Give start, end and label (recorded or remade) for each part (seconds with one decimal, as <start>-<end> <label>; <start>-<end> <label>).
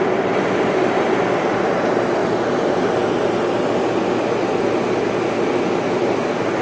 0.0-6.6 recorded